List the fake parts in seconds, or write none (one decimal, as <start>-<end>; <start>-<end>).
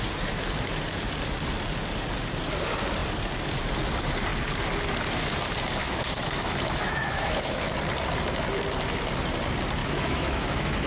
5.8-7.7; 9.8-10.9